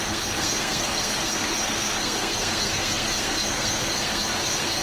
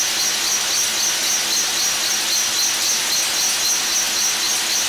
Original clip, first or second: second